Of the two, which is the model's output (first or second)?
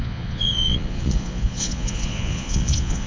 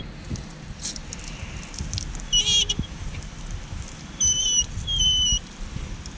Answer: first